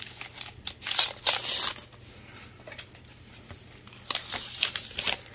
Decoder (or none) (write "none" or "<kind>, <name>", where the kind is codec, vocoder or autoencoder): none